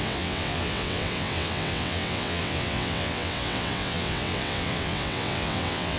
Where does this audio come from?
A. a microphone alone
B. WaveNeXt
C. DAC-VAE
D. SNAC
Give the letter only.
B